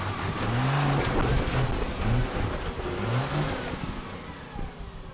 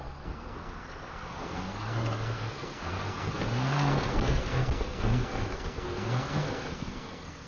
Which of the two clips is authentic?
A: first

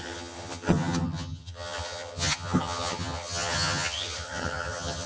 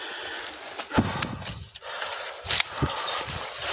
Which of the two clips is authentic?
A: second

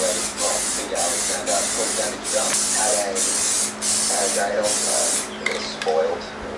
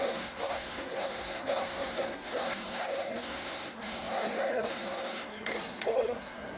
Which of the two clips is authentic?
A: first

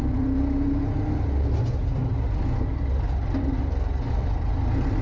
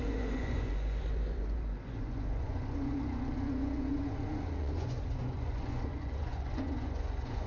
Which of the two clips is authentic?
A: first